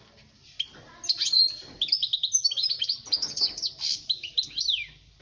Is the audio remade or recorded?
recorded